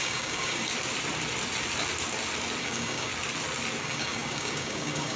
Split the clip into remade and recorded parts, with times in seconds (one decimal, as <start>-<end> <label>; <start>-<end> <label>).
0.0-0.7 remade; 0.7-2.6 recorded; 2.6-3.1 remade; 3.1-3.8 recorded; 3.8-5.2 remade